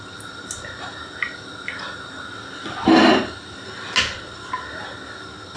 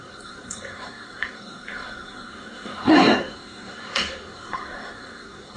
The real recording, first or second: first